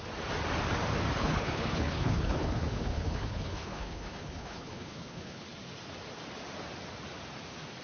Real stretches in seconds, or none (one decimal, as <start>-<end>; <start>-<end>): 0.0-1.2; 5.4-7.8

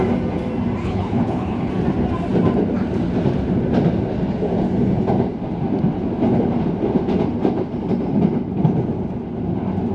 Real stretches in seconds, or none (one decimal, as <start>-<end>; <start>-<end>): 0.0-0.8; 1.7-9.9